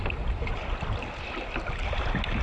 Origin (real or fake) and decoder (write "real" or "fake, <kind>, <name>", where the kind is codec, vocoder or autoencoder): real